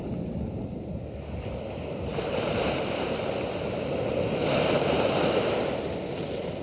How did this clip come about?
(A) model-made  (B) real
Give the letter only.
B